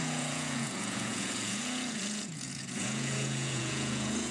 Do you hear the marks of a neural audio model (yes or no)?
yes